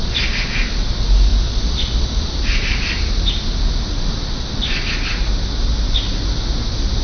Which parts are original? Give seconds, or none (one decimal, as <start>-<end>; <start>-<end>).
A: 0.0-1.3; 3.7-7.0